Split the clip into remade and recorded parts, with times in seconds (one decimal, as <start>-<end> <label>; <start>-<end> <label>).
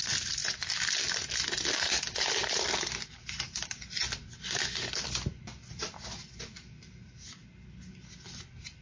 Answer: 0.0-2.4 recorded; 2.4-3.0 remade; 3.0-8.8 recorded